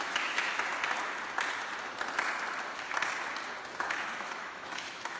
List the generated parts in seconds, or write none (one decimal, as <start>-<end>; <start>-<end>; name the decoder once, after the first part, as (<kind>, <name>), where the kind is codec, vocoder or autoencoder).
0.0-0.7 (autoencoder, DAC-VAE); 3.8-5.2